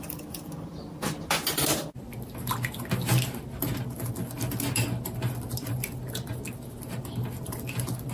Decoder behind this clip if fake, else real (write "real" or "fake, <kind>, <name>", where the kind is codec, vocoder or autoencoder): real